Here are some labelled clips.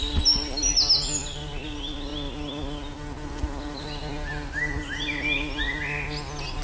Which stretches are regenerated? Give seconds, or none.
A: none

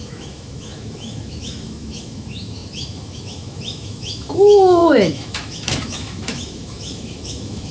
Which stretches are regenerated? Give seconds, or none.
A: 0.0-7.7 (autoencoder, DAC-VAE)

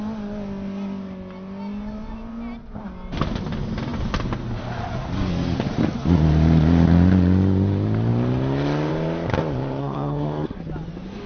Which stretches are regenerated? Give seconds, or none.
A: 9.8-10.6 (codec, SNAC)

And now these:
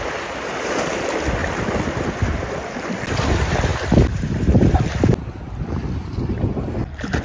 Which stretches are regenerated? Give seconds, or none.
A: 1.4-2.9 (vocoder, BigVGAN v2)